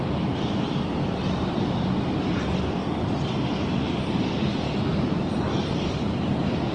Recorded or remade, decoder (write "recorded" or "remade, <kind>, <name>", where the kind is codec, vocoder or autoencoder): recorded